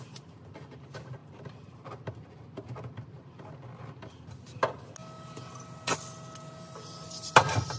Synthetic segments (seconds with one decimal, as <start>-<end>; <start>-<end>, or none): 1.2-2.1